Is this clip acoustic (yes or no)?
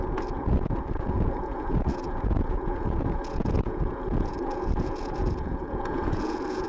no